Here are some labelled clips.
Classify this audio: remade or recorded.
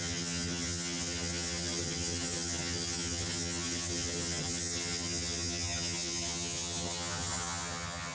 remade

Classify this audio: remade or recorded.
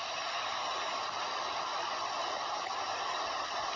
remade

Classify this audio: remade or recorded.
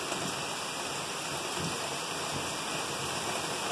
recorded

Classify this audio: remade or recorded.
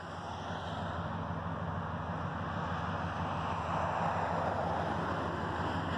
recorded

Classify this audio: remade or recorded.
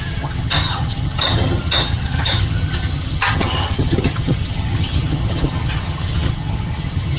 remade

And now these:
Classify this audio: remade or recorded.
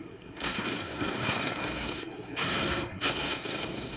remade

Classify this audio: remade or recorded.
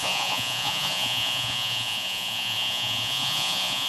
remade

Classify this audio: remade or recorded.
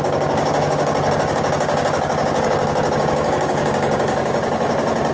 remade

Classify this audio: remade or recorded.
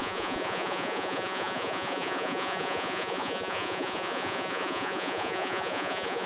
remade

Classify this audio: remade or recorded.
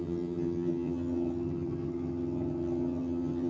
remade